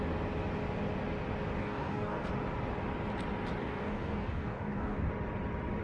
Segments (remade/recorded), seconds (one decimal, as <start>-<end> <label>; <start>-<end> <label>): 0.0-1.6 recorded; 1.6-2.3 remade; 2.3-3.6 recorded; 3.6-5.1 remade; 5.1-5.8 recorded